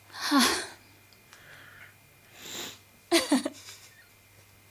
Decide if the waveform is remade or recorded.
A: recorded